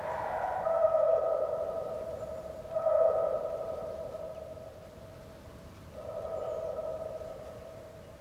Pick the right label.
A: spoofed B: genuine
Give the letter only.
B